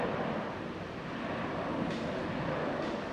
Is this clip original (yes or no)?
yes